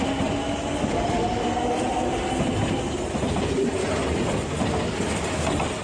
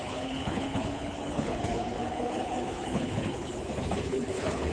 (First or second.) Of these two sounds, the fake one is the second